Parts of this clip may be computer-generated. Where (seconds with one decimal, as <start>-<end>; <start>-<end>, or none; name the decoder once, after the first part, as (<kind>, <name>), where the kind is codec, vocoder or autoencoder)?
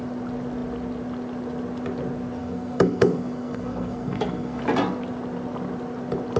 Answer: 2.4-4.6 (codec, SNAC)